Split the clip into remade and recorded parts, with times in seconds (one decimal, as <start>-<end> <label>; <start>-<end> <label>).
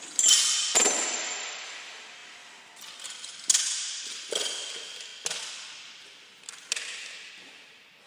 0.0-8.1 recorded